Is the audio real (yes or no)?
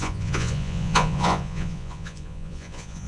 no